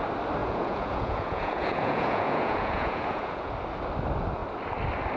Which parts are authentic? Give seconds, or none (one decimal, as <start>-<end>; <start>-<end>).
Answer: 0.0-0.4; 3.5-5.2